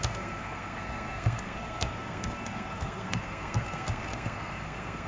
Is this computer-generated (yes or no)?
yes